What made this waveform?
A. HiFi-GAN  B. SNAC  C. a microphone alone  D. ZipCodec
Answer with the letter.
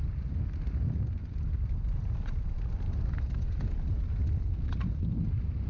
C